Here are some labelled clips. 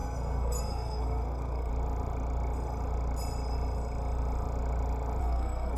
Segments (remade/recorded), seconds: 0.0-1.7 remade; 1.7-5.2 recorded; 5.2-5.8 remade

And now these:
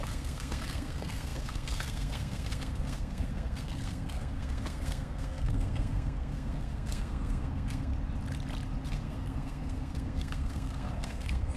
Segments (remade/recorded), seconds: 0.0-7.9 remade; 7.9-8.9 recorded; 8.9-11.6 remade

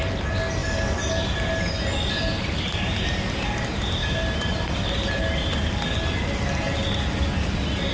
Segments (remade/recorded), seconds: 0.0-7.9 recorded

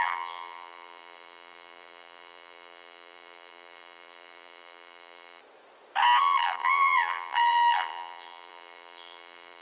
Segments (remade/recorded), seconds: 0.0-5.4 remade; 5.4-6.2 recorded; 6.2-9.6 remade

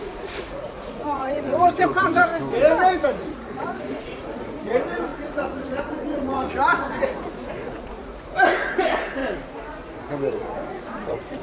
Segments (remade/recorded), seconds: 0.0-2.3 remade; 2.3-2.9 recorded; 2.9-9.2 remade; 9.2-10.3 recorded; 10.3-11.4 remade